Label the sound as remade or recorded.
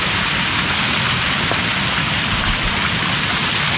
recorded